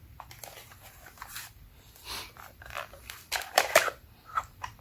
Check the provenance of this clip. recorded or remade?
remade